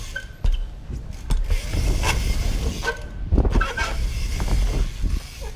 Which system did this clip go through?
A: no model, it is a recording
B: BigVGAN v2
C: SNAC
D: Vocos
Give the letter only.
A